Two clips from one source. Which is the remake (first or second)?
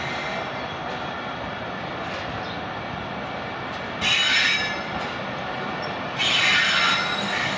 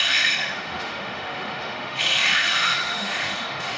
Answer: second